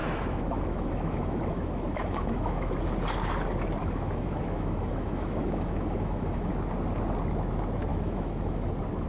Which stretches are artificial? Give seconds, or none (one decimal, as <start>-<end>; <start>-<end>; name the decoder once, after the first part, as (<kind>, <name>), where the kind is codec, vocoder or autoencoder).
0.0-2.7 (autoencoder, DAC-VAE); 3.8-6.5; 7.9-8.7